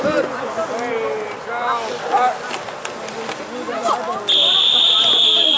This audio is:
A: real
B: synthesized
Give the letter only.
A